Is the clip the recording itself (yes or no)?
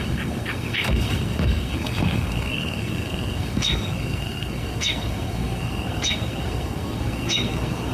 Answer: no